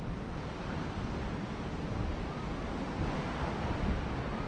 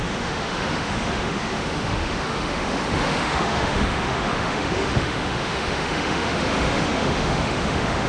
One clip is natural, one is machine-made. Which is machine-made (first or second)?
second